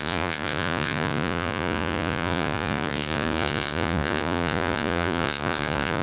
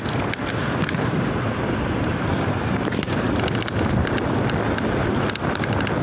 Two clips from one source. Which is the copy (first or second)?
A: first